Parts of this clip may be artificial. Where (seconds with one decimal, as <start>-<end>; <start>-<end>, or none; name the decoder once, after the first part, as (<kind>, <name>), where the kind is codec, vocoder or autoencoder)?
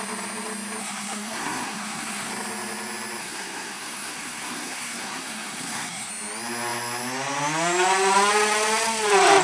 0.8-2.3 (codec, SNAC); 3.2-6.1